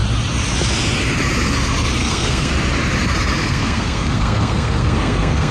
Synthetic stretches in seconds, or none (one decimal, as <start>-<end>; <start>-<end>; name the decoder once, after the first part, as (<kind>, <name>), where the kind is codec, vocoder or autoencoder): 2.0-2.5 (codec, SNAC); 3.4-5.5